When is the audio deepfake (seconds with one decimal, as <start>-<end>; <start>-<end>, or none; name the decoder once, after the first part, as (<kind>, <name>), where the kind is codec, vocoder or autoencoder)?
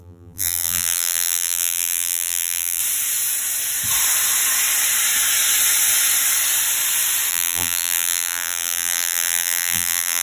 0.0-2.8 (vocoder, BigVGAN v2); 7.3-10.2